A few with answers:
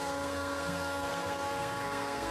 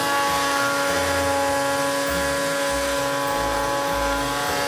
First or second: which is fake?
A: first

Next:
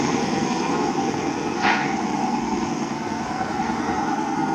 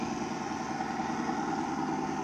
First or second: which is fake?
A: first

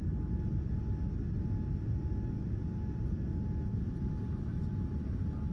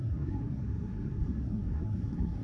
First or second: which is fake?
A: second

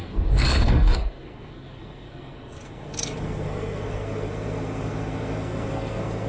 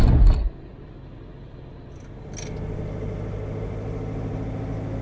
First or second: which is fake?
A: first